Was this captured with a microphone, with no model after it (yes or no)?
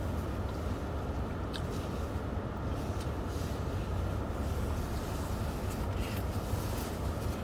yes